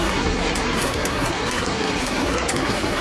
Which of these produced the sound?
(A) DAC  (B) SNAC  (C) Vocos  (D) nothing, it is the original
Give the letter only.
B